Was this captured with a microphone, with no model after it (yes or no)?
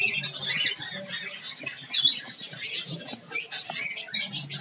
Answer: yes